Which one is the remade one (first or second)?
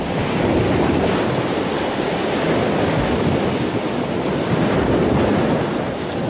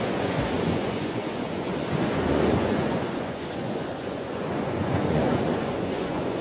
second